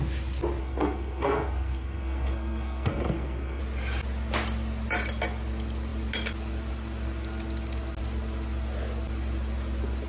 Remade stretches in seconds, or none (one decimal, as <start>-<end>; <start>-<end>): 0.6-3.6